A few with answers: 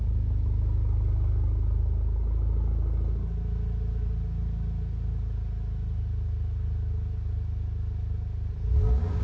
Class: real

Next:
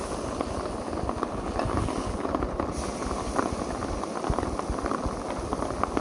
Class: real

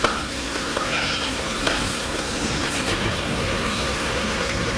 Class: fake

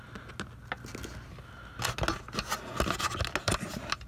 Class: real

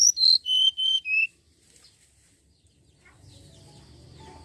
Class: real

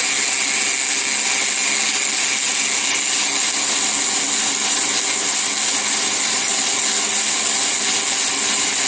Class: real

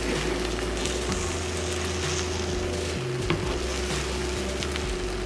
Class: real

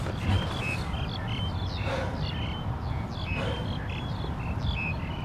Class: real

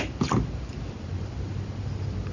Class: real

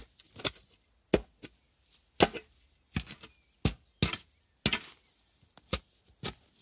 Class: real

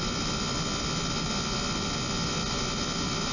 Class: real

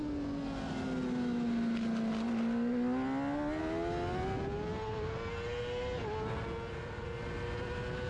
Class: real